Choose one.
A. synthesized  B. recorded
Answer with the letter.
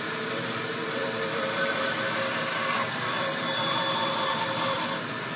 A